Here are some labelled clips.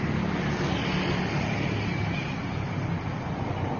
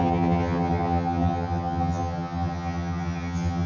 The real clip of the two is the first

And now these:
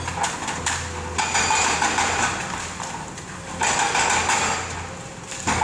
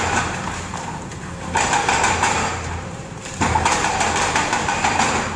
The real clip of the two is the first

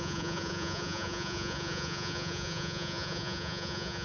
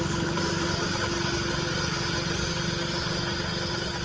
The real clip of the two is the second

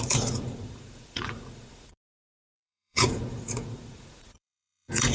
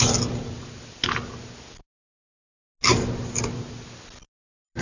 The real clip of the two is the second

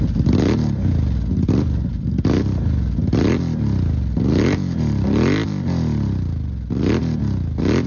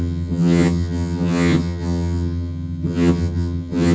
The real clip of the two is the first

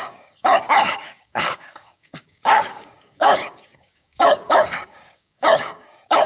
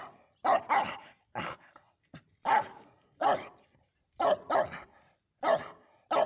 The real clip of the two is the second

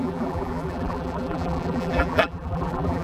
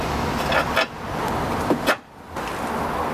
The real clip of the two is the second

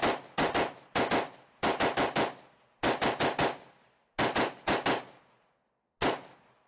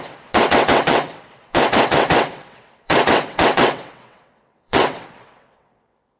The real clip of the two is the first